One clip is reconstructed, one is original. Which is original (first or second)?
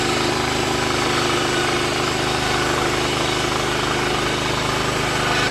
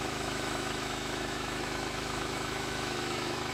first